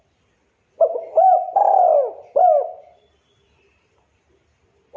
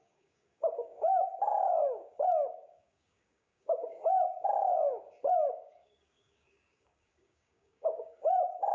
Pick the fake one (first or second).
second